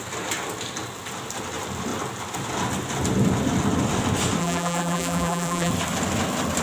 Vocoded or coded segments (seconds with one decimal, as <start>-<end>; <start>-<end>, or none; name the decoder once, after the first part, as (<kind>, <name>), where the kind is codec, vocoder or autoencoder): 4.4-5.7 (vocoder, BigVGAN v2)